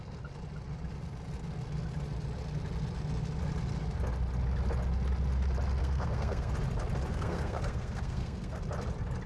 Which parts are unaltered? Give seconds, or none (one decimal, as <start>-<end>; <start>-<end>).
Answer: 0.0-5.8; 6.5-7.1; 8.6-9.3